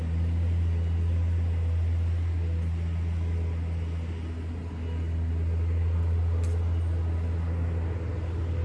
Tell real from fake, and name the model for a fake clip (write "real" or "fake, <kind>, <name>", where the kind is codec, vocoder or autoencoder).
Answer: real